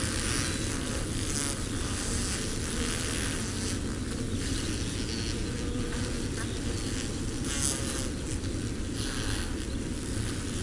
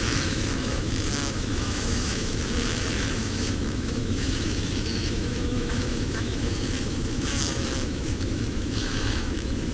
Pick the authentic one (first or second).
first